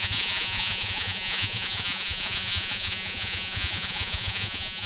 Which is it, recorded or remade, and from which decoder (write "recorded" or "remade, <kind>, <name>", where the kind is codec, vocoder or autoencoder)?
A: remade, vocoder, Vocos